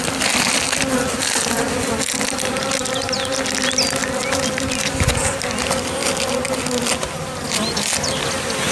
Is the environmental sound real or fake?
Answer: real